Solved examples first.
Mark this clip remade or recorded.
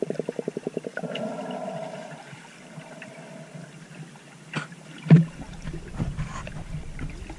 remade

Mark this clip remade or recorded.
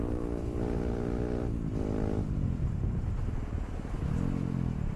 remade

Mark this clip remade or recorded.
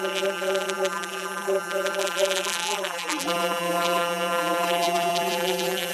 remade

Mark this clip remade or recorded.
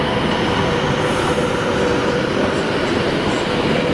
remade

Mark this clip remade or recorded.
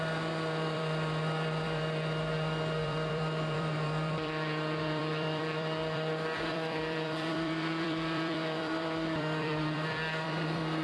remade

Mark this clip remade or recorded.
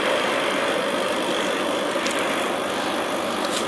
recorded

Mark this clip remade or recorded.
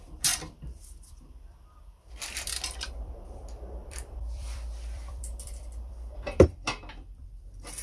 remade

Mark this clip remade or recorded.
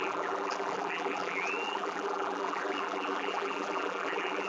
remade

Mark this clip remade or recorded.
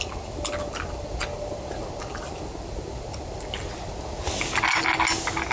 recorded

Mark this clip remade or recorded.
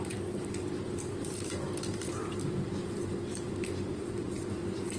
remade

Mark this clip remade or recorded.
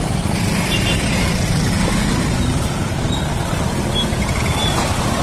remade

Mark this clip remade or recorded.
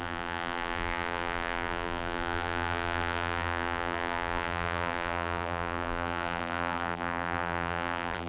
remade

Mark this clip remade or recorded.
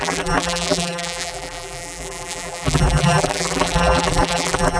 remade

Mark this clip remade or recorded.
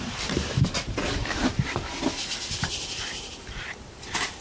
recorded